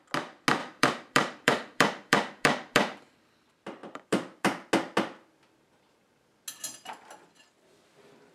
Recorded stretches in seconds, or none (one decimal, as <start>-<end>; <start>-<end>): 0.0-0.6; 3.0-3.8; 4.7-8.3